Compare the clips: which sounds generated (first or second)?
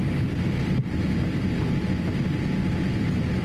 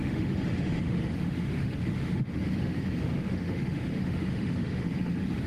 second